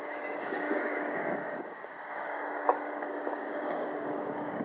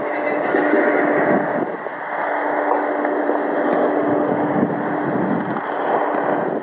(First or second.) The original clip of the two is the second